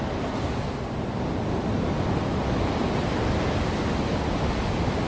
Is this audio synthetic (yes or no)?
no